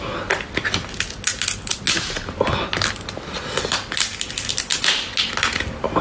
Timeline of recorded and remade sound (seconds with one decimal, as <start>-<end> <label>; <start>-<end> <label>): 0.0-6.0 recorded